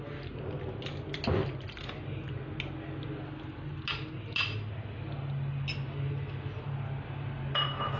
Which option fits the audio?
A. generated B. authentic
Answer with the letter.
B